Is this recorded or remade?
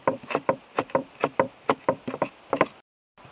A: recorded